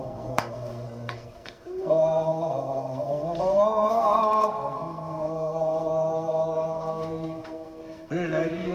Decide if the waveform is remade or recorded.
remade